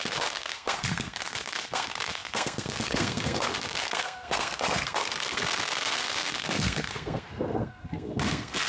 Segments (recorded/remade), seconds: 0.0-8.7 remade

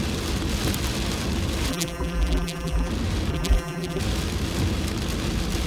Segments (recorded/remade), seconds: 0.0-1.7 recorded; 1.7-2.9 remade; 2.9-3.3 recorded; 3.3-4.0 remade; 4.0-5.7 recorded

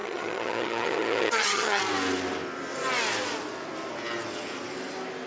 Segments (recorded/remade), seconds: 0.0-1.8 remade; 1.8-5.3 recorded

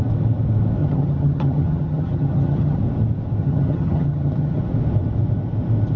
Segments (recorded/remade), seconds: 0.0-0.8 recorded; 0.8-2.8 remade; 2.8-3.4 recorded; 3.4-4.6 remade; 4.6-6.0 recorded

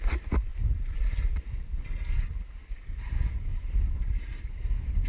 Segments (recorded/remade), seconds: 0.0-0.5 recorded; 0.5-1.4 remade; 1.4-3.5 recorded; 3.5-5.1 remade

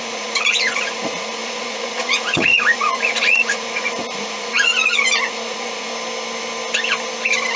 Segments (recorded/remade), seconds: 0.0-4.7 remade; 4.7-5.3 recorded; 5.3-5.9 remade; 5.9-7.6 recorded

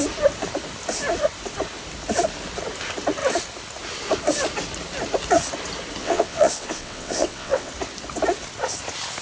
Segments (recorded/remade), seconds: 0.0-6.0 recorded; 6.0-7.7 remade; 7.7-9.2 recorded